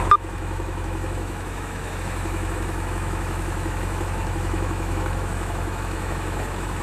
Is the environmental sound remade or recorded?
remade